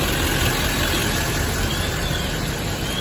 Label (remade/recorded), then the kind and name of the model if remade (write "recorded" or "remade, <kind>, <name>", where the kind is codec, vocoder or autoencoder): recorded